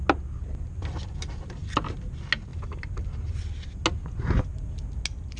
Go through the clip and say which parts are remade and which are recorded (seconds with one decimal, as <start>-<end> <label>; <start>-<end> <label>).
0.0-5.4 recorded